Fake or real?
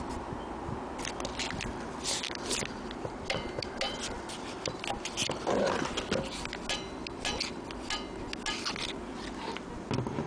real